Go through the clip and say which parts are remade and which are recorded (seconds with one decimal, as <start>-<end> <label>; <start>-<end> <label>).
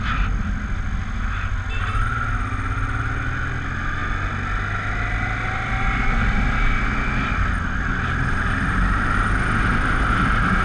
0.0-10.6 recorded